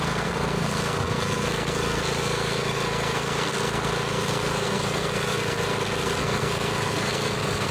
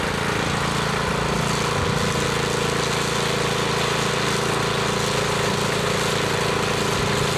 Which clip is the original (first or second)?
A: second